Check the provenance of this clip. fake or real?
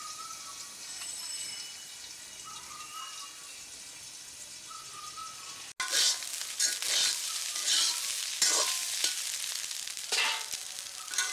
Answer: real